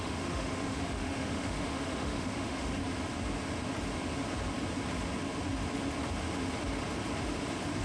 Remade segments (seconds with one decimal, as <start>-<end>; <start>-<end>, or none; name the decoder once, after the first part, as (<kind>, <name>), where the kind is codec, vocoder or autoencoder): 0.0-2.8 (autoencoder, DAC-VAE)